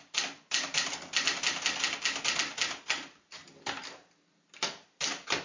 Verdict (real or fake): real